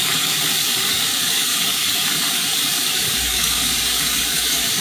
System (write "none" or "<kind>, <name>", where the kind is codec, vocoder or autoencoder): codec, DAC